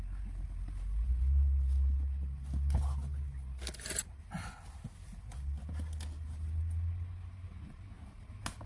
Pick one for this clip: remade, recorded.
recorded